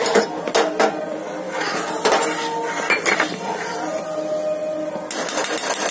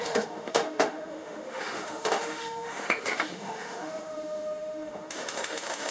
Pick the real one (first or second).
first